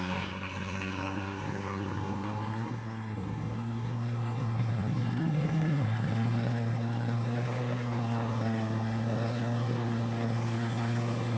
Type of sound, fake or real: fake